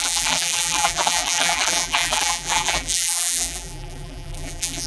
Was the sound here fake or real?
fake